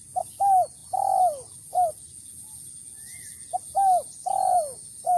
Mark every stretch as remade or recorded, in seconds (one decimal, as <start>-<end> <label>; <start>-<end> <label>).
0.0-5.2 recorded